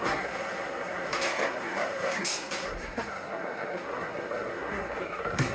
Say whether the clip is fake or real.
fake